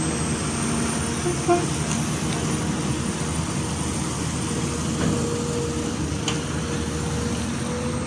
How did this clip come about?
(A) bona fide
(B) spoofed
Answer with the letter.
A